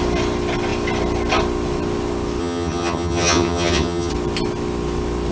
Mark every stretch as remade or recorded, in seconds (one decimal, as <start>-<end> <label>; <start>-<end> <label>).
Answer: 0.0-2.4 recorded; 2.4-4.1 remade; 4.1-5.3 recorded